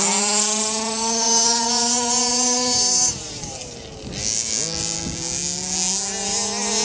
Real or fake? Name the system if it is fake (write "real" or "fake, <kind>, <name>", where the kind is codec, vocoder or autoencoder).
real